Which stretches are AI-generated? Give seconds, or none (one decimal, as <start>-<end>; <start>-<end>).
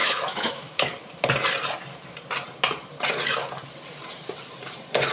0.0-0.9